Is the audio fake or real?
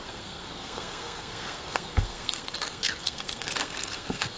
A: fake